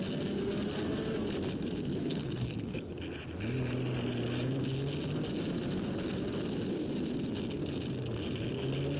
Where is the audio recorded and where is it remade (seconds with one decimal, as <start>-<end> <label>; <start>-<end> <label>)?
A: 0.0-2.0 recorded; 2.0-2.9 remade; 2.9-9.0 recorded